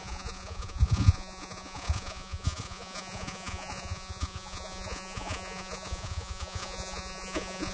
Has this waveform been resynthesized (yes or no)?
yes